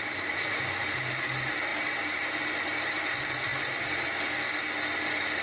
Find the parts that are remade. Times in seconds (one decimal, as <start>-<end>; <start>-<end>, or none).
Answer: none